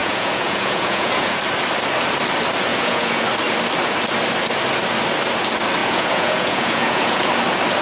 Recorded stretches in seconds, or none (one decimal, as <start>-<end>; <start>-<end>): 1.4-2.7; 3.2-5.8; 7.3-7.8